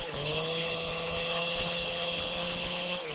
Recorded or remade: remade